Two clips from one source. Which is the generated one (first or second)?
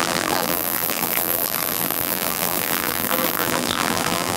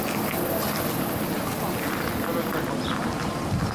first